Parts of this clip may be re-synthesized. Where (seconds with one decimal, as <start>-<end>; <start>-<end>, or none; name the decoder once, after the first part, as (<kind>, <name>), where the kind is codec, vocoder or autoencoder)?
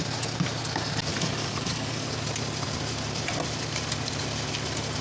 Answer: 1.1-2.1 (codec, DAC)